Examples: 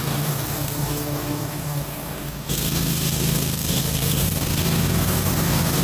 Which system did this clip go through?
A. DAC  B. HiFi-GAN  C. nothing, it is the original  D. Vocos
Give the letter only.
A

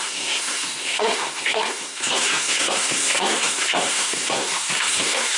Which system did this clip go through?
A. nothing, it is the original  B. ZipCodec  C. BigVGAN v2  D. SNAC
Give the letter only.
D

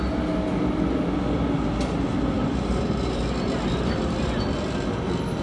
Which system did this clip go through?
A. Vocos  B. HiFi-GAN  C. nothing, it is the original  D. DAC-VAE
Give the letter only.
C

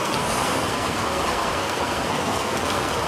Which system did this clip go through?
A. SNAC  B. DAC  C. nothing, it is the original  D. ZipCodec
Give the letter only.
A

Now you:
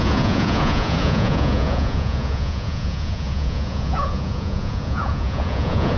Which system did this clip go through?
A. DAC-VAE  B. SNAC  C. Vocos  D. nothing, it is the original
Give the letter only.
C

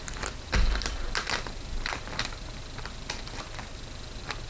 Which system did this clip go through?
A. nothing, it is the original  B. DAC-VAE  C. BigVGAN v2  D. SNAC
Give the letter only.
A